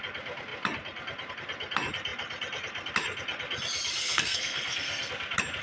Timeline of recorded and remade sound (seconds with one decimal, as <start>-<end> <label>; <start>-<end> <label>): 0.0-4.0 recorded; 4.0-5.1 remade; 5.1-5.6 recorded